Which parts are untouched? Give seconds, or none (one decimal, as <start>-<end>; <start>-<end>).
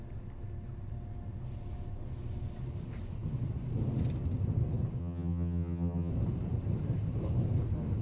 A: 0.0-5.0; 6.1-8.0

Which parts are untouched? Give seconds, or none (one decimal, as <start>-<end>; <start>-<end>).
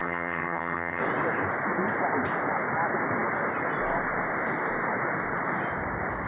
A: 1.0-6.3